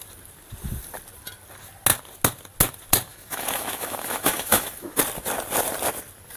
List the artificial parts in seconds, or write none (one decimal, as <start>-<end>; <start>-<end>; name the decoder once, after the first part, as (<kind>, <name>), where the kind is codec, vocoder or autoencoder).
3.1-5.0 (autoencoder, DAC-VAE)